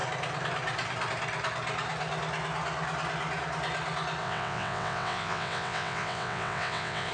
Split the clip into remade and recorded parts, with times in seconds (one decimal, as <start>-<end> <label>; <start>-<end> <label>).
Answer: 0.0-4.2 recorded; 4.2-7.1 remade